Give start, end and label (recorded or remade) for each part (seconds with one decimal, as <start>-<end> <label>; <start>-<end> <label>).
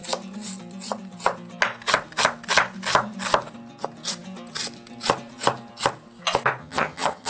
0.0-6.6 recorded; 6.6-7.3 remade